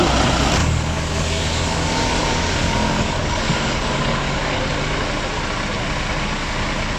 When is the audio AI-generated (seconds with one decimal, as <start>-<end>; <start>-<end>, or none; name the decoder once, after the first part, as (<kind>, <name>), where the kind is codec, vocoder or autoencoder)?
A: 0.6-4.6 (codec, DAC)

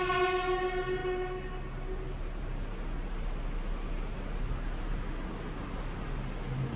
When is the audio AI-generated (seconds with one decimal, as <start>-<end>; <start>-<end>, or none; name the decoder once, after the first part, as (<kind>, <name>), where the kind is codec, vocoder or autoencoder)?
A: none

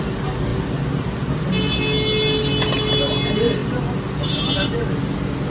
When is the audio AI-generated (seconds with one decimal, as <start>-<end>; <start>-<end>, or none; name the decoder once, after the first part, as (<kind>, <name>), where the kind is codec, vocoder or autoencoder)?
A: none

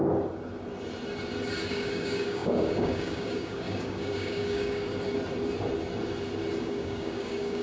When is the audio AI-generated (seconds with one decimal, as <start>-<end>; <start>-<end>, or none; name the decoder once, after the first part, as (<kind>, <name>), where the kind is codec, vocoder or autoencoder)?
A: 1.7-4.9 (codec, DAC); 6.6-7.6

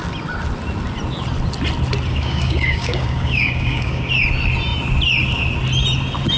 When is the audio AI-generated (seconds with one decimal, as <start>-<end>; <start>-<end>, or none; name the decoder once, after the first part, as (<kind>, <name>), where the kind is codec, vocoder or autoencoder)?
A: 2.1-4.1 (codec, DAC)

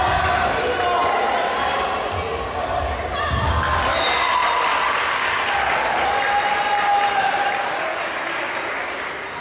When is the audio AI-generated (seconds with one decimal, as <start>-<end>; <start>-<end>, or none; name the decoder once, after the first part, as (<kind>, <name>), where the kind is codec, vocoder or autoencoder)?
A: 7.9-8.7 (codec, DAC)

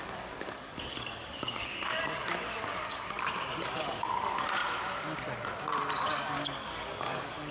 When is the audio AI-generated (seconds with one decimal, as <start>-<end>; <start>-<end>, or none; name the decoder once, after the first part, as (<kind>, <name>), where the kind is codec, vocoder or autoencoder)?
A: 0.0-4.6 (codec, DAC); 6.0-7.5